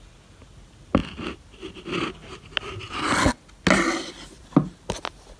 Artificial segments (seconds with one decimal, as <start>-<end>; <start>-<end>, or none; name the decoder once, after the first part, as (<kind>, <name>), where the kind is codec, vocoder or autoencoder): none